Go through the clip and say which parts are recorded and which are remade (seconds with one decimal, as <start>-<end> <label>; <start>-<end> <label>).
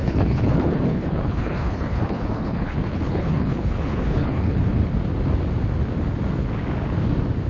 0.0-4.8 remade; 4.8-7.5 recorded